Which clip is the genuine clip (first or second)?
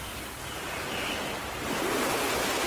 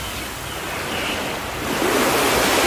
first